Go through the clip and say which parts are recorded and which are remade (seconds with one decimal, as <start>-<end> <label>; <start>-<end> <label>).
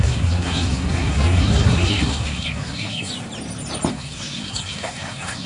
0.0-3.1 remade; 3.1-3.9 recorded; 3.9-5.5 remade